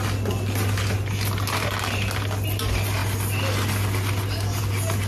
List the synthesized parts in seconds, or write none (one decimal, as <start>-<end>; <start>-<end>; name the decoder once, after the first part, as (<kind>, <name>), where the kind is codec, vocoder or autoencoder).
none